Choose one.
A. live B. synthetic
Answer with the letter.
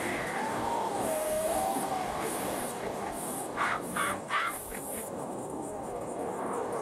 B